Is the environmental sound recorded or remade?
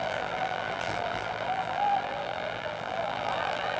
remade